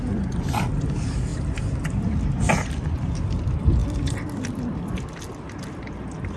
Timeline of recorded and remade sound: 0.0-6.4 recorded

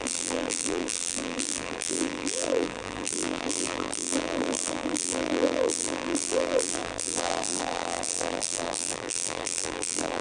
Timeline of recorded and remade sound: 0.0-10.2 remade

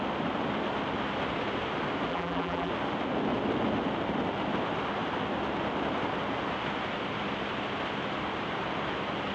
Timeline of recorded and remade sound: 0.0-2.1 recorded; 2.1-2.7 remade; 2.7-9.3 recorded

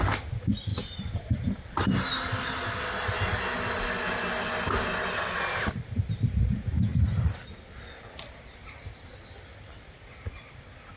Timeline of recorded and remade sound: 0.0-11.0 recorded

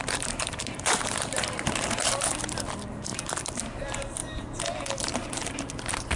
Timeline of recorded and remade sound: 0.0-4.2 remade; 4.2-5.0 recorded; 5.0-6.2 remade